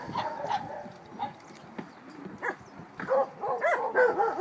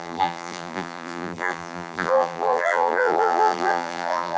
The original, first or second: first